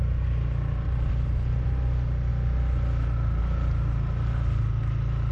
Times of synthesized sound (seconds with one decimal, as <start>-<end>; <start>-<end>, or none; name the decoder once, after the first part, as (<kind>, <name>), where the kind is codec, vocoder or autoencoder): none